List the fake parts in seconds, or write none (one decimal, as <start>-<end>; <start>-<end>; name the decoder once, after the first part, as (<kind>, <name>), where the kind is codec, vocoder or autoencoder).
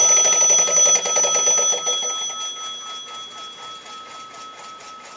none